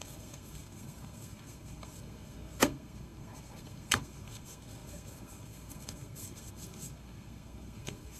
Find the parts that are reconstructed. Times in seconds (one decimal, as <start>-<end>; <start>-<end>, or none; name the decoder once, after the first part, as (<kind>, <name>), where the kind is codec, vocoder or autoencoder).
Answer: 0.0-8.2 (codec, SNAC)